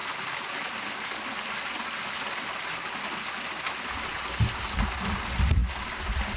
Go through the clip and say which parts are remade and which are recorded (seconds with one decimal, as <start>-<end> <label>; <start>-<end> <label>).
0.0-6.4 recorded